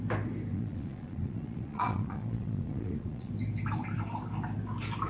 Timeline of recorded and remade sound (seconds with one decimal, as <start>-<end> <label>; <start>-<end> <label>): 0.0-0.5 recorded; 0.5-3.3 remade; 3.3-5.1 recorded

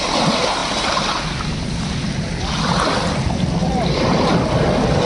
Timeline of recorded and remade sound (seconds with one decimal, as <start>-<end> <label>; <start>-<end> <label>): 0.0-5.1 recorded

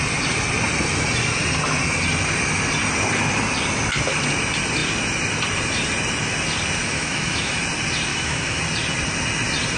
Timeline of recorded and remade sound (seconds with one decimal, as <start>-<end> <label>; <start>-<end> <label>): 0.0-6.8 recorded; 6.8-7.6 remade; 7.6-8.1 recorded; 8.1-8.6 remade; 8.6-9.8 recorded